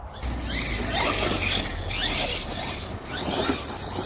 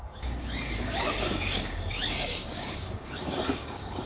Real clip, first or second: first